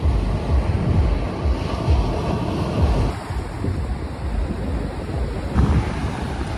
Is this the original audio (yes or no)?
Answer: yes